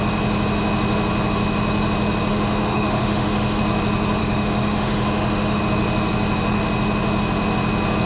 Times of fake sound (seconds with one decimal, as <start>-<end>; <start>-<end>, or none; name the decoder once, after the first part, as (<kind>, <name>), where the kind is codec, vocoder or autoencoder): 2.3-3.6 (autoencoder, DAC-VAE); 4.2-5.6

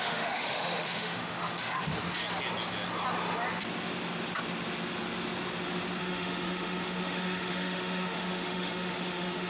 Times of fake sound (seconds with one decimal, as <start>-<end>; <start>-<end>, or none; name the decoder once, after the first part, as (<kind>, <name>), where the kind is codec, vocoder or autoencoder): 0.0-1.9 (autoencoder, DAC-VAE); 6.0-9.5

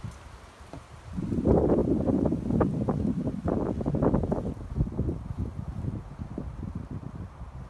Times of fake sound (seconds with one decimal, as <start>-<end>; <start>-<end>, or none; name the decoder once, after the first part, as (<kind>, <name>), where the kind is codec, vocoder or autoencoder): none

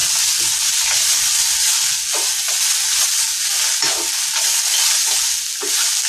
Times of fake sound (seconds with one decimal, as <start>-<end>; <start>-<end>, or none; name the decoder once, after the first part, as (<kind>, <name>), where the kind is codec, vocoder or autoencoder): none

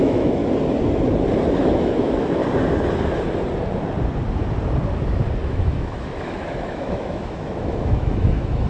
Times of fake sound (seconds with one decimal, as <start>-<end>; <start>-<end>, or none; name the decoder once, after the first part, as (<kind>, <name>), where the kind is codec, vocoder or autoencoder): 0.0-0.4 (autoencoder, DAC-VAE); 1.6-2.4; 5.4-8.7

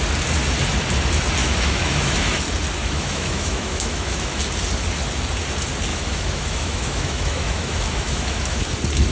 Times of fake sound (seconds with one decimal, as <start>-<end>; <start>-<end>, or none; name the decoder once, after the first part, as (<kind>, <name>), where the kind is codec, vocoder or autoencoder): 1.4-2.4 (autoencoder, DAC-VAE); 2.8-4.4; 5.9-8.6

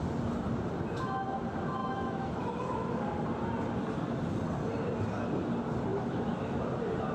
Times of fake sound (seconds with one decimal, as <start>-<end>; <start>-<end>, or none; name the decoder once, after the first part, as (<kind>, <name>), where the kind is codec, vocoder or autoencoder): 1.8-3.0 (autoencoder, DAC-VAE); 5.9-6.6

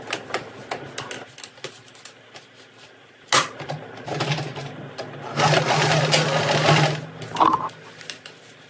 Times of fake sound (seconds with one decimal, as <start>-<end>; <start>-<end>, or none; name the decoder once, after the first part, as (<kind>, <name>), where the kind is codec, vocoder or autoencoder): none